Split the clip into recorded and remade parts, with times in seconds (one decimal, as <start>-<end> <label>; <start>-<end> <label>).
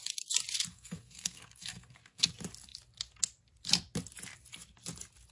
0.0-0.7 recorded; 0.7-2.3 remade; 2.3-5.3 recorded